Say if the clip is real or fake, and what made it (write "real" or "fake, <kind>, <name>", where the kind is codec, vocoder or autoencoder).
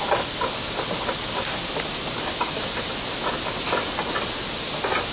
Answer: real